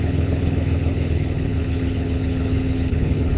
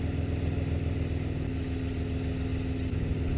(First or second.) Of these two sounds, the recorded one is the second